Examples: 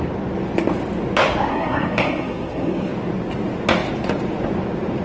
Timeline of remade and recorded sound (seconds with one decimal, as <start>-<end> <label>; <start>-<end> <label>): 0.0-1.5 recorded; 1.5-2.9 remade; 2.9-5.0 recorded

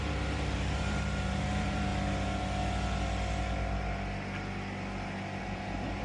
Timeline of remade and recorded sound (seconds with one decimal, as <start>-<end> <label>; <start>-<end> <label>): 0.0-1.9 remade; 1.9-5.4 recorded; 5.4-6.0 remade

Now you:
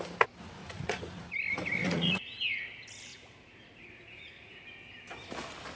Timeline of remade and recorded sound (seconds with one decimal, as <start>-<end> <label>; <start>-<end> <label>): 0.0-0.6 recorded; 0.6-1.2 remade; 1.2-1.8 recorded; 1.8-2.4 remade; 2.4-3.1 recorded; 3.1-4.6 remade; 4.6-5.8 recorded